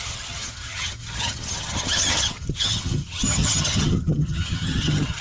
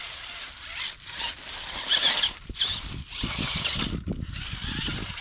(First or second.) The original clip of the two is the second